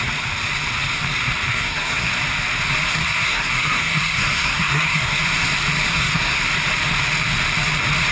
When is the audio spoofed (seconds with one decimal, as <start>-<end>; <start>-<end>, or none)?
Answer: 1.5-2.1; 2.9-5.2; 5.9-6.4